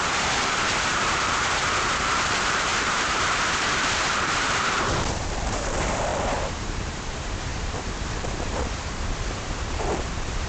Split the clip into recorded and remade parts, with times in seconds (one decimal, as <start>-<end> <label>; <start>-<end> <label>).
0.0-10.5 remade